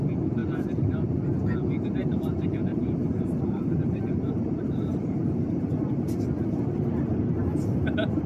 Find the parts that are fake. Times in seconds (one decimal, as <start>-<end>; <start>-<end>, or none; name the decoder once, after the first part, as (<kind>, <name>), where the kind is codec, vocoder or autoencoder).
0.4-1.1 (vocoder, BigVGAN v2); 2.0-5.9